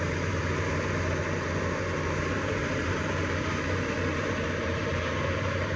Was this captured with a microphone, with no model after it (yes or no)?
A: no